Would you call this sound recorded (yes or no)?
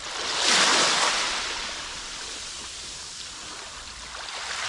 yes